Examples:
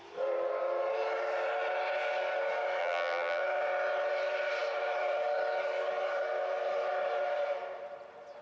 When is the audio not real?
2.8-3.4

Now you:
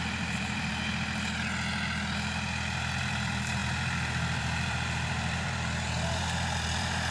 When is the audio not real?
0.0-0.7; 3.0-7.1

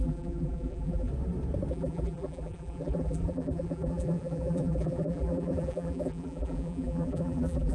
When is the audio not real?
0.0-1.1; 1.7-7.7

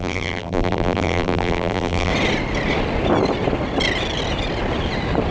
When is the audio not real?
0.0-2.1